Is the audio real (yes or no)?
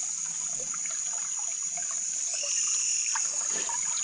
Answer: yes